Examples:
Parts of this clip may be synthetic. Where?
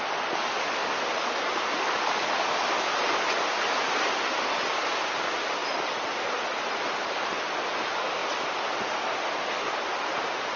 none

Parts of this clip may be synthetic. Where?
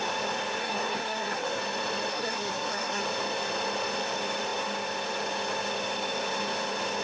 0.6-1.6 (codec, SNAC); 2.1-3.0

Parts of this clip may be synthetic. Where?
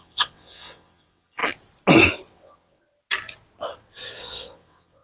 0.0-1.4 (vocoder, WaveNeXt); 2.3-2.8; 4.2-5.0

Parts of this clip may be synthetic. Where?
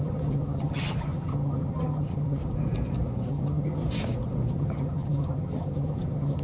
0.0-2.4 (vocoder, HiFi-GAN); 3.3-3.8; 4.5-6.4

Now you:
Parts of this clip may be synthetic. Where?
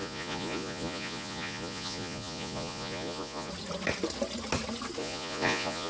0.0-3.5 (vocoder, Vocos); 5.0-5.9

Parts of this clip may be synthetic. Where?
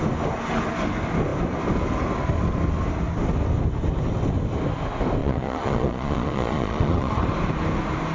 5.2-7.1 (vocoder, Vocos)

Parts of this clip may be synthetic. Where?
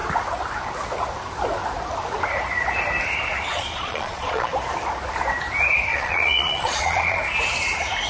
3.5-4.5 (vocoder, Vocos); 5.9-7.2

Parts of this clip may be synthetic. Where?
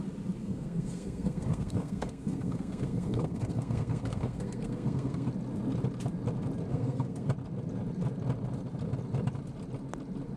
0.4-5.3 (codec, SNAC); 6.7-7.3